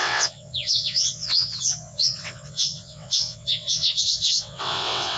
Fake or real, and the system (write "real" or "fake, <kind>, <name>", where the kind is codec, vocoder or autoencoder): fake, vocoder, WaveNeXt